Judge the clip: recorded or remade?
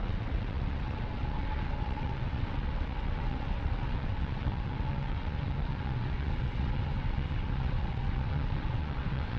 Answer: remade